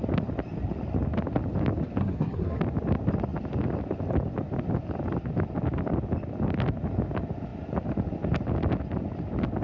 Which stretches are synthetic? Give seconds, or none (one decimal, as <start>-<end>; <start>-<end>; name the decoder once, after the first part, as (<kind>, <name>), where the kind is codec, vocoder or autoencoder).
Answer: 2.0-2.6 (codec, SNAC)